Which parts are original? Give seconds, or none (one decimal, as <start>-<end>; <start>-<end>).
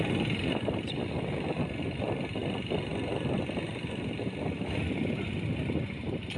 0.0-6.4